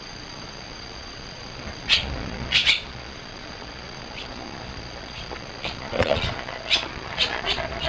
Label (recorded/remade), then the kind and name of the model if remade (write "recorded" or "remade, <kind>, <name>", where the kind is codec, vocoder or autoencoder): remade, vocoder, Vocos